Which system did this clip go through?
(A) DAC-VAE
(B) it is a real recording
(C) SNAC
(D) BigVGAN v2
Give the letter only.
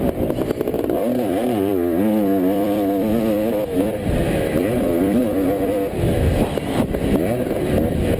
D